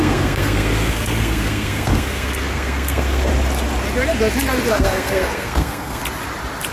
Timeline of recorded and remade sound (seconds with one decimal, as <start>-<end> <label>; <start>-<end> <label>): 0.0-3.3 remade; 3.3-4.7 recorded; 4.7-6.0 remade; 6.0-6.7 recorded